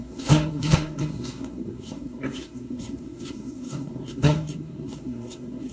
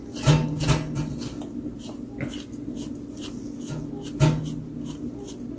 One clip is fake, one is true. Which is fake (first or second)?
first